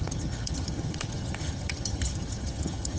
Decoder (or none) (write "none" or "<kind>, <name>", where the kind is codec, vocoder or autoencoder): vocoder, HiFi-GAN